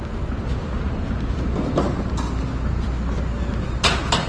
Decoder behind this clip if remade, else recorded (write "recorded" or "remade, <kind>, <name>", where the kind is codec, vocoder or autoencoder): recorded